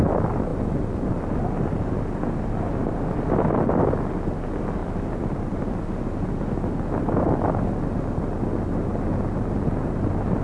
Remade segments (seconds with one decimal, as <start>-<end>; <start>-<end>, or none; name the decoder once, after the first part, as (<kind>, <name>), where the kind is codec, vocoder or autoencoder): 0.5-1.1 (vocoder, BigVGAN v2); 4.8-5.6

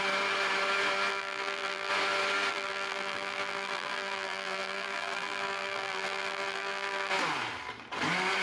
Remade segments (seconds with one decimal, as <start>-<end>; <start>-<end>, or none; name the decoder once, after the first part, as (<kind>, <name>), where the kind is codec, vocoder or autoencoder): 1.1-1.9 (vocoder, BigVGAN v2); 2.5-7.1